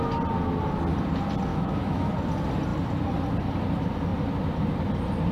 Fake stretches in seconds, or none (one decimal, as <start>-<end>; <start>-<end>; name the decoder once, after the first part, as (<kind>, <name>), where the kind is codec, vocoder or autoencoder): 1.5-2.1 (autoencoder, DAC-VAE)